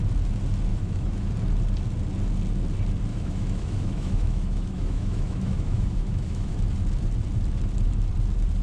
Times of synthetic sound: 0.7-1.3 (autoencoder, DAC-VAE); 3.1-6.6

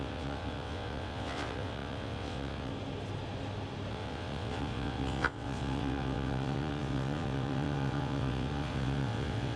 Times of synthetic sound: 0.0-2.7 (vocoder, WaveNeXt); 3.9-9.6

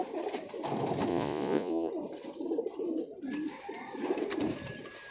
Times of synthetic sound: 1.1-1.9 (vocoder, Vocos)